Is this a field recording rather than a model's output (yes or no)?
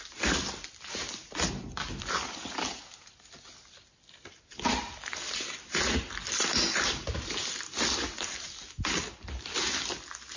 yes